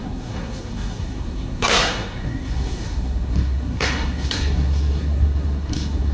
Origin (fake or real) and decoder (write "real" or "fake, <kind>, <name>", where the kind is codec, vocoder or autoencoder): fake, codec, SNAC